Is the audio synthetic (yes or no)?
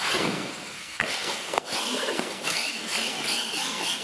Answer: yes